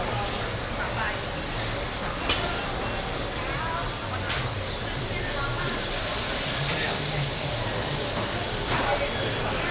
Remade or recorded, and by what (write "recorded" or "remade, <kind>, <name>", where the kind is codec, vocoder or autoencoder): recorded